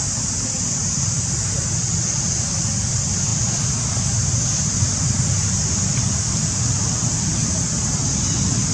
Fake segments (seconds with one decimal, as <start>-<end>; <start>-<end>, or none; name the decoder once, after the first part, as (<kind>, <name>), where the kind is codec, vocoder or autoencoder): none